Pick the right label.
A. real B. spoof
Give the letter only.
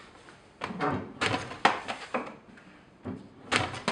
A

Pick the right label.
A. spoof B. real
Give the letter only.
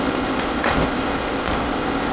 A